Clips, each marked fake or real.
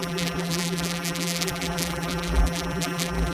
fake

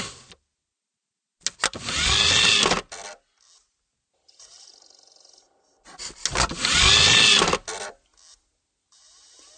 real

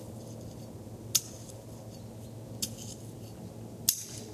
real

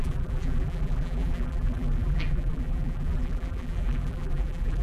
fake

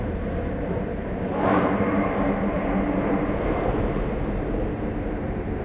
fake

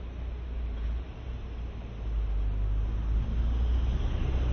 real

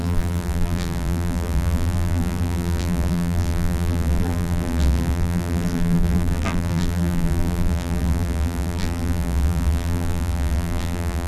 fake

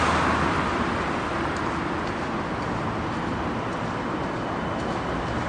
real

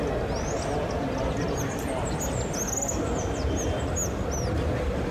real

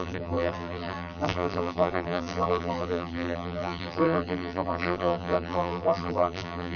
fake